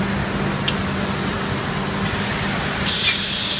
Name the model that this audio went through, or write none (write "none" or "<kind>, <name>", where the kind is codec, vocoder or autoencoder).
none